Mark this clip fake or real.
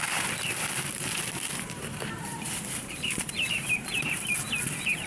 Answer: fake